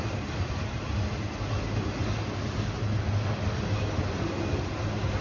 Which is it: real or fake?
real